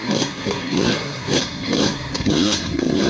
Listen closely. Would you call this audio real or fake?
fake